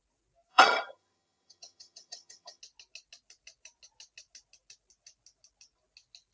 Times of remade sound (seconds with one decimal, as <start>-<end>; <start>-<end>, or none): 0.5-2.6